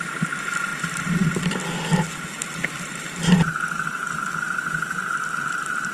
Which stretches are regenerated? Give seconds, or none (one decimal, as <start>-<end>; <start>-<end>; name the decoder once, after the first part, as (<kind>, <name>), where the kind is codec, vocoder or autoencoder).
none